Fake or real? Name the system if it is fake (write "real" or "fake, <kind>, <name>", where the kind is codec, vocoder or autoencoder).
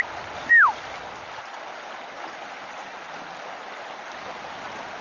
real